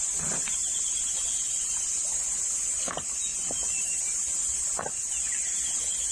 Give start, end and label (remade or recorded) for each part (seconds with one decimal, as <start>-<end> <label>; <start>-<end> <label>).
0.0-6.1 recorded